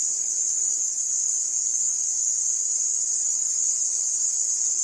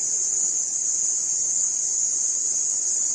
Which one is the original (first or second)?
second